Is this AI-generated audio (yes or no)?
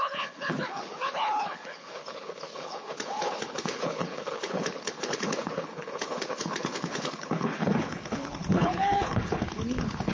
yes